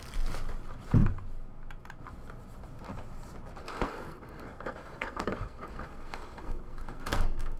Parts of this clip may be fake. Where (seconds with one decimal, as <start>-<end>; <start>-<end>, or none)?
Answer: 3.6-7.6